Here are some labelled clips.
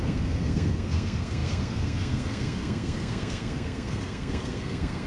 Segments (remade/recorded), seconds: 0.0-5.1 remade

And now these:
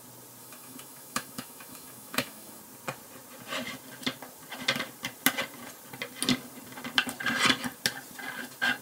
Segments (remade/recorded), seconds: 0.0-0.4 recorded; 0.4-2.6 remade; 2.6-8.8 recorded

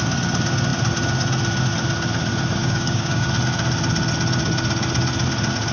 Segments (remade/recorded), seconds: 0.0-2.6 recorded; 2.6-3.3 remade; 3.3-5.7 recorded

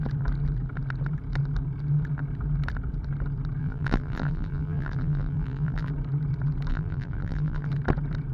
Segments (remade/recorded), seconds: 0.0-3.6 recorded; 3.6-5.9 remade; 5.9-6.7 recorded; 6.7-7.7 remade; 7.7-8.3 recorded

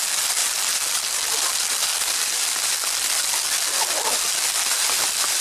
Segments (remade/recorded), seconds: 0.0-5.4 recorded

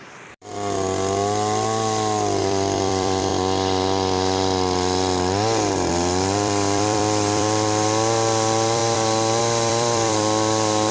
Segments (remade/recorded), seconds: 0.0-0.5 remade; 0.5-2.4 recorded; 2.4-3.3 remade; 3.3-5.9 recorded; 5.9-10.9 remade